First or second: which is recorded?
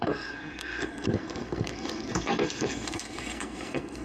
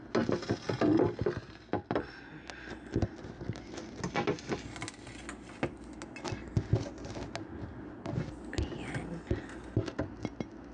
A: second